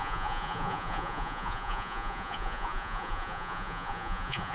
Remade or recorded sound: remade